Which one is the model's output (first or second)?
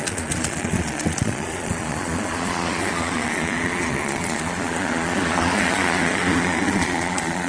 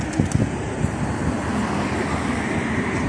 first